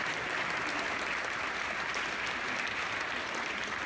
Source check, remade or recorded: recorded